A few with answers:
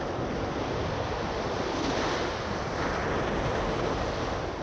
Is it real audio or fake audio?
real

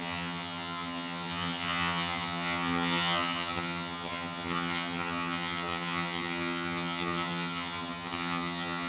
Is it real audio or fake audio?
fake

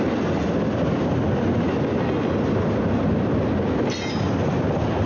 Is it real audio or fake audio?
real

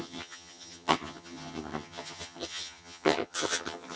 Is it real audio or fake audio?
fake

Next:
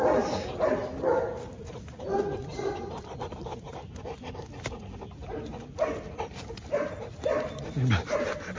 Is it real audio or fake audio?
real